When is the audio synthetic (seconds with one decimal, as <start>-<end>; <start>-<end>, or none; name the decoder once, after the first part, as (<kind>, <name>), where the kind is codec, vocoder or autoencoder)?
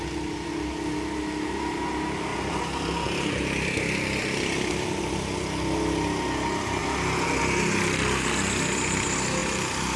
2.3-4.7 (vocoder, BigVGAN v2); 6.8-7.4